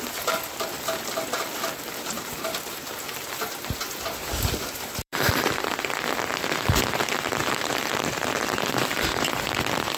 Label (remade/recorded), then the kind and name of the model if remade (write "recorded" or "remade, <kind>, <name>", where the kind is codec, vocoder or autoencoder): remade, vocoder, BigVGAN v2